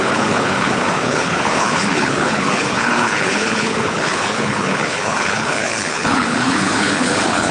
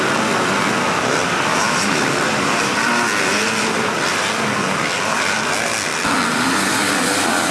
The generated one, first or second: first